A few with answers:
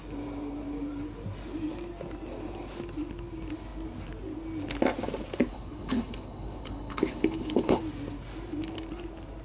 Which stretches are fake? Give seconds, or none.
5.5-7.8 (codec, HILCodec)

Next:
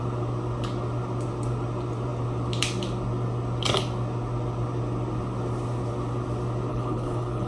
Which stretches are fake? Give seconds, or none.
6.7-7.5 (codec, HILCodec)

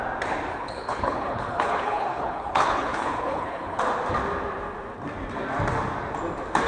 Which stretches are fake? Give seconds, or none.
0.5-3.8 (codec, HILCodec)

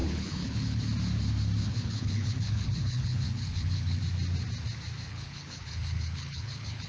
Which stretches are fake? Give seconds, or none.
0.0-0.8 (codec, HILCodec); 1.7-4.0; 5.1-6.9

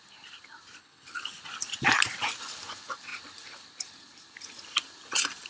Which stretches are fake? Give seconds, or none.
0.8-1.4 (codec, HILCodec)

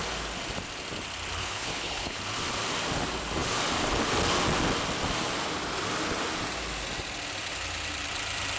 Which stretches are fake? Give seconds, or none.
1.4-2.2 (codec, HILCodec)

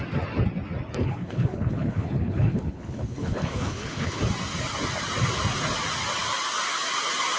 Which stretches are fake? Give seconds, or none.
1.0-4.2 (codec, HILCodec)

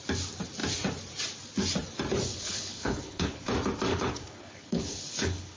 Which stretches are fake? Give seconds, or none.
2.3-3.4 (codec, HILCodec); 3.9-5.6